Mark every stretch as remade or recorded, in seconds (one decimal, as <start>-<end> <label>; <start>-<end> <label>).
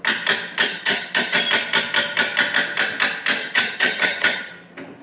0.0-0.6 recorded; 0.6-1.4 remade; 1.4-3.4 recorded; 3.4-4.5 remade; 4.5-5.0 recorded